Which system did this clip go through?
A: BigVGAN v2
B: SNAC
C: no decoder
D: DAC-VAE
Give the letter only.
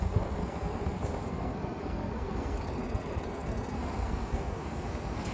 B